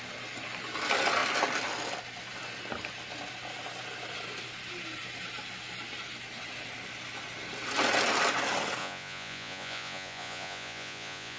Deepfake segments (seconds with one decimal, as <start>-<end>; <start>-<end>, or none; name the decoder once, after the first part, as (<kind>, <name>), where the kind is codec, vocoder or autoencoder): 8.8-11.4 (vocoder, Vocos)